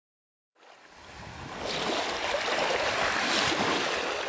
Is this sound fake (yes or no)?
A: no